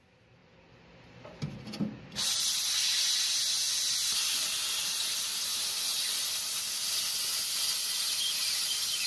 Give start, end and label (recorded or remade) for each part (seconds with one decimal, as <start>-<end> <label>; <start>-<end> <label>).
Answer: 0.0-9.1 recorded